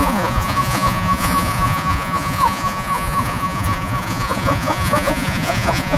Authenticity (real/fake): fake